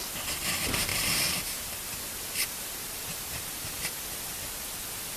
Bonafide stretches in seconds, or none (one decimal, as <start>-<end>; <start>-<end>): 0.0-0.9; 4.0-5.2